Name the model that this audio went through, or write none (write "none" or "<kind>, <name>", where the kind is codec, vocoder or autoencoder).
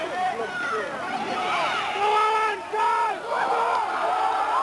none